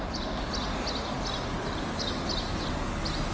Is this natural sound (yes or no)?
yes